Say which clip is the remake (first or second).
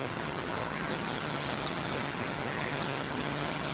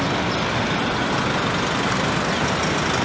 first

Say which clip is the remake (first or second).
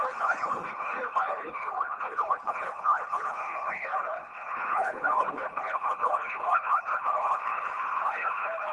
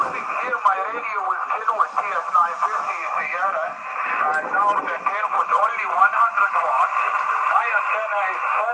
first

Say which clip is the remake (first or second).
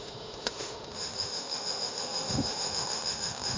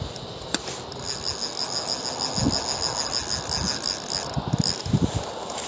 first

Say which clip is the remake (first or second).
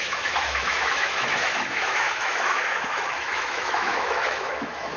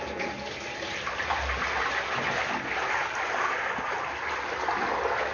first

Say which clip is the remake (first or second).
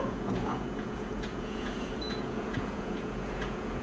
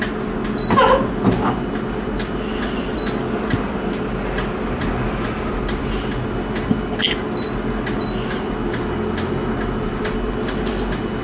first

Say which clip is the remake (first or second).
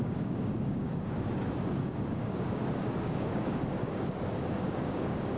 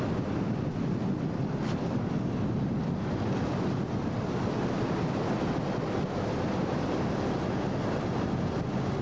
first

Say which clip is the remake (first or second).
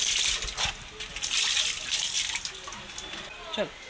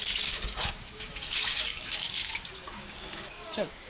second